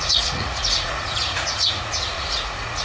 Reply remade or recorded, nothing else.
remade